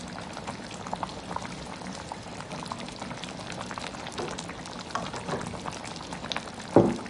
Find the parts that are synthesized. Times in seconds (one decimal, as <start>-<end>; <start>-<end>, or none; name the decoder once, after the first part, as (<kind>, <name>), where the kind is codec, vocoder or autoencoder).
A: 1.1-4.6 (vocoder, BigVGAN v2)